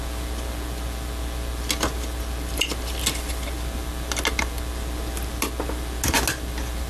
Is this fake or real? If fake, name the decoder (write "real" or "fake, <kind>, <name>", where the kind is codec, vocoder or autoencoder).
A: real